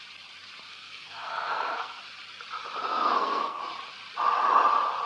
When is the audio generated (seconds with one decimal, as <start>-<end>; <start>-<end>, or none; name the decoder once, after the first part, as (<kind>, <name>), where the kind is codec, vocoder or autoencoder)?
0.7-2.0 (codec, SNAC); 2.9-3.6